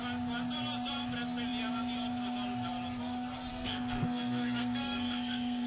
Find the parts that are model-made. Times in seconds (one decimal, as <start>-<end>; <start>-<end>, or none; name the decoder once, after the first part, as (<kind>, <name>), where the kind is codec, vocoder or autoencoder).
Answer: 3.5-5.7 (codec, SNAC)